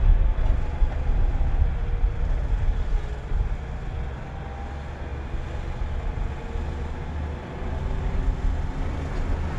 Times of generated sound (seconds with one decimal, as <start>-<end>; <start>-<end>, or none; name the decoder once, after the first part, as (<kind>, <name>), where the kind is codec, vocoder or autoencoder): none